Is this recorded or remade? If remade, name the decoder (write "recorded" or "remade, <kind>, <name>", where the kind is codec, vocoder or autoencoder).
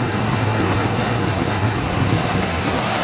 remade, codec, SNAC